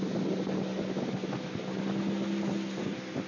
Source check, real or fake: real